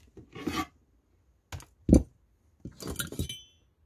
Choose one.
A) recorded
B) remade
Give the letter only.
A